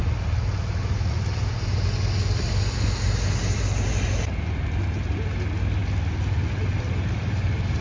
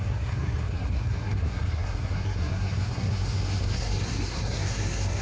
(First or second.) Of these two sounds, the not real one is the second